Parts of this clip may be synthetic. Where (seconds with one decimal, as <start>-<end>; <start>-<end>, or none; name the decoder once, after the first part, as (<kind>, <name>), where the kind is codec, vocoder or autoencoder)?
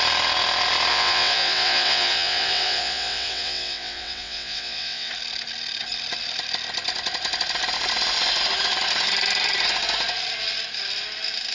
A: 0.9-5.1 (vocoder, WaveNeXt)